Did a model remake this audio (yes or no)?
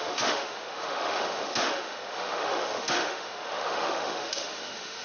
yes